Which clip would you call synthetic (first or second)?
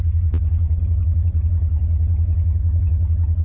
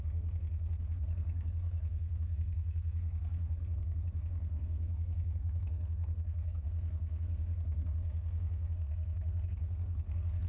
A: second